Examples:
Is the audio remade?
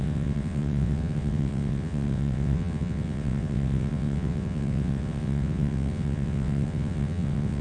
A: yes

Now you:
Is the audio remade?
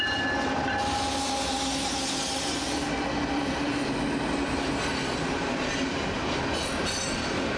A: no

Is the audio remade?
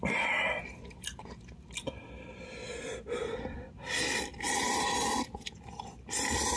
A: no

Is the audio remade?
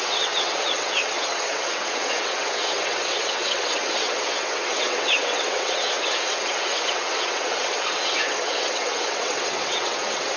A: yes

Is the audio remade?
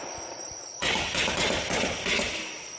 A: no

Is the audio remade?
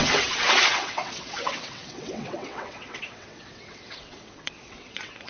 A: yes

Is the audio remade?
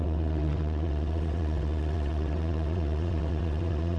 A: yes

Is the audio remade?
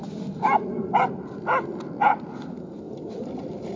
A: no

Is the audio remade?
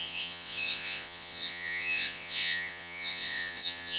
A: yes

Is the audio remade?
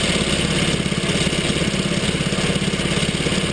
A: no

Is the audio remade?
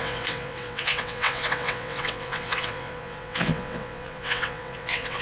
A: yes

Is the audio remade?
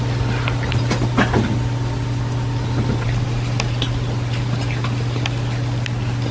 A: no